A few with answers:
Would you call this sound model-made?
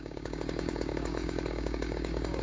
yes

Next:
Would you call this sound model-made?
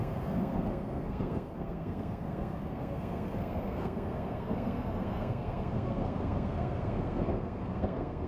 yes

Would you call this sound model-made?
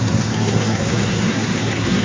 yes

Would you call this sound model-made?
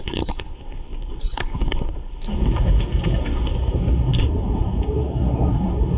yes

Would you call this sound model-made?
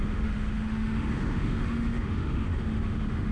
yes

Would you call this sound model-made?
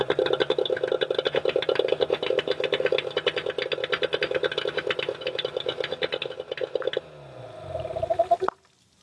no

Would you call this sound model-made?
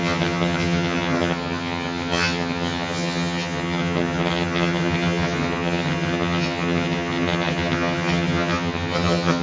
yes